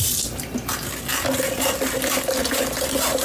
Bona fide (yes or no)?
yes